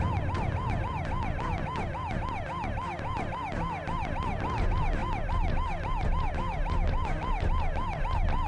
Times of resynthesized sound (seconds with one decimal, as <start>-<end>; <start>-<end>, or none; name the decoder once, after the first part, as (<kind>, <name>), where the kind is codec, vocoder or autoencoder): none